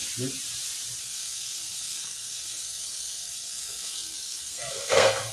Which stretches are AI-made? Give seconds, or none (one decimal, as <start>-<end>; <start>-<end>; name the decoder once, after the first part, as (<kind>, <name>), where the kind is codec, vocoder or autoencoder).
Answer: 1.0-5.3 (codec, SNAC)